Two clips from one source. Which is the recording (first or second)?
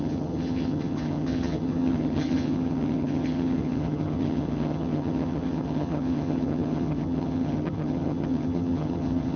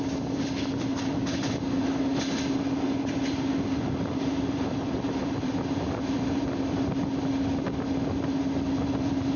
second